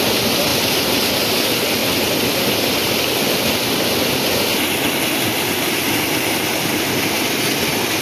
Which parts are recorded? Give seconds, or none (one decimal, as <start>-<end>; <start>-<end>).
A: 0.0-8.0